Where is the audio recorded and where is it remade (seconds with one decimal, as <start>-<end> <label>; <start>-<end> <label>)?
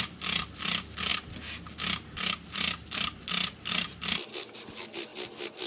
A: 0.0-5.7 recorded